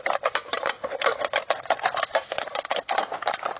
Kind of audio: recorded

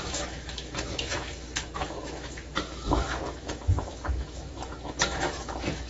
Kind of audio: remade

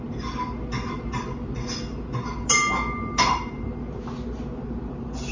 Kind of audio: recorded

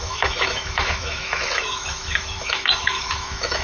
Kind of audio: remade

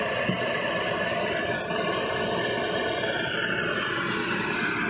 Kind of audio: recorded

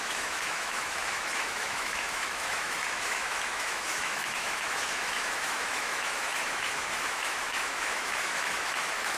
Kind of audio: remade